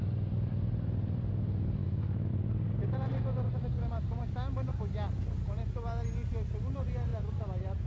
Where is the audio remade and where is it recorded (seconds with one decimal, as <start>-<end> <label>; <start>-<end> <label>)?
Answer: 0.0-1.8 recorded; 1.8-2.3 remade; 2.3-7.9 recorded

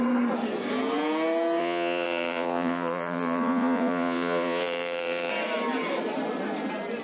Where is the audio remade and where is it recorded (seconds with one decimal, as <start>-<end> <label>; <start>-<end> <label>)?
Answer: 0.0-1.6 recorded; 1.6-5.3 remade; 5.3-7.0 recorded

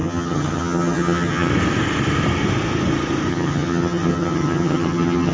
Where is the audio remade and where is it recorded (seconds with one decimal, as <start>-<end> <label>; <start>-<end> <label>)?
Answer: 0.0-1.5 remade; 1.5-3.3 recorded; 3.3-5.3 remade

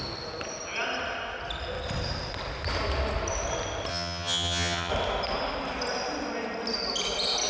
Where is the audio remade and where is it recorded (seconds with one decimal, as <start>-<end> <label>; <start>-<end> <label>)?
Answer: 0.0-3.9 recorded; 3.9-4.9 remade; 4.9-7.5 recorded